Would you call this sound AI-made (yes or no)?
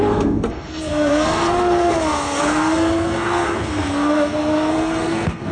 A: yes